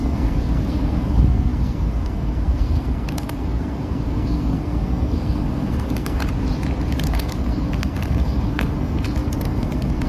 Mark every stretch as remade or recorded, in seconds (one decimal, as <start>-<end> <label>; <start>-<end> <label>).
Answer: 0.0-6.2 remade; 6.2-7.1 recorded; 7.1-10.1 remade